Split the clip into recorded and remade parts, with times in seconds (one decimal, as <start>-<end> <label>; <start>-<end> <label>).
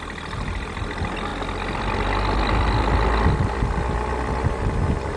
0.0-5.2 recorded